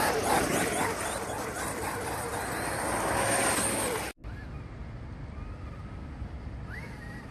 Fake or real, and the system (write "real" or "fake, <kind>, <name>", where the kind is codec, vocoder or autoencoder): real